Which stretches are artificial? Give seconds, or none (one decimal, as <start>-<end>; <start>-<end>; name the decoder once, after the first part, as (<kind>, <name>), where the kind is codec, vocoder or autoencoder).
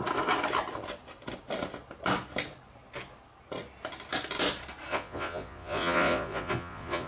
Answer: 4.9-7.1 (vocoder, Vocos)